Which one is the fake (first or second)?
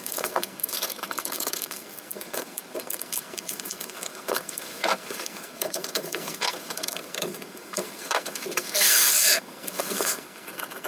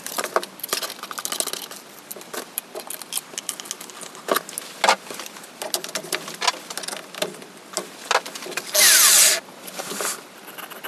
first